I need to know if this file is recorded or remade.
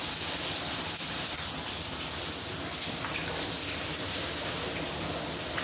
recorded